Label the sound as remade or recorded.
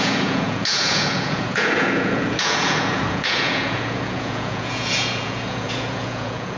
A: remade